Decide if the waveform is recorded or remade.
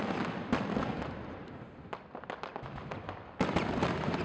recorded